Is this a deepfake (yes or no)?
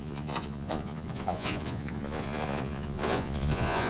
yes